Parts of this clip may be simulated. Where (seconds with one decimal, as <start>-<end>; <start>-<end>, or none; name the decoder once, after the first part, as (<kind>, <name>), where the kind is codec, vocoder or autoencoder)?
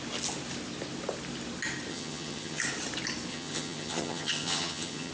1.9-2.6 (vocoder, HiFi-GAN); 3.3-5.1